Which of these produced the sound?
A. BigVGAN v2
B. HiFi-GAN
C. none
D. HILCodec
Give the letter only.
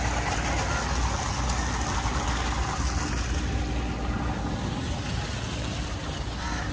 C